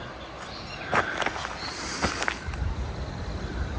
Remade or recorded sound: recorded